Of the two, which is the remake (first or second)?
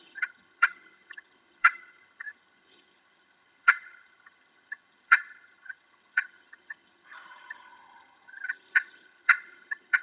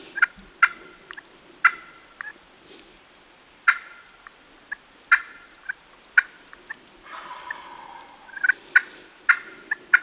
first